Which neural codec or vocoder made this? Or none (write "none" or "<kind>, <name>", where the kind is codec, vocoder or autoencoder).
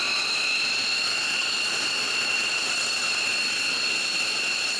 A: none